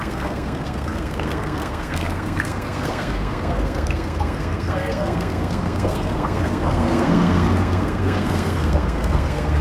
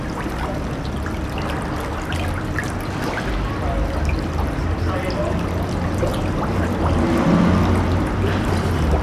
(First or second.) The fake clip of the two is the first